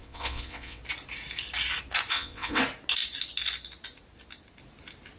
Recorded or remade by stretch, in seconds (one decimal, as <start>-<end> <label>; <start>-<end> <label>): 0.0-0.8 remade; 0.8-2.1 recorded; 2.1-2.6 remade; 2.6-5.2 recorded